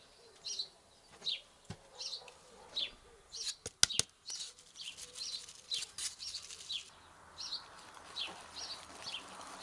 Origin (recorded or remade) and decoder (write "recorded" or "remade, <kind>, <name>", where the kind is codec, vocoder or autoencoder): recorded